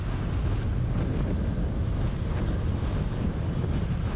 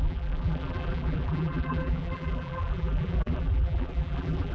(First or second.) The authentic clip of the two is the first